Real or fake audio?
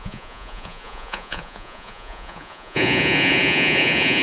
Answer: fake